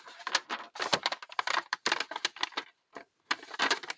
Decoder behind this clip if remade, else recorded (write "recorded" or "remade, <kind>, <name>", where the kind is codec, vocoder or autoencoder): recorded